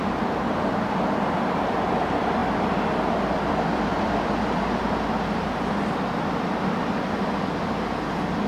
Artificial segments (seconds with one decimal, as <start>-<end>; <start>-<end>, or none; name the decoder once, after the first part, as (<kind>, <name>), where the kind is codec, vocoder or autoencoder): 0.0-2.4 (vocoder, BigVGAN v2); 3.1-8.5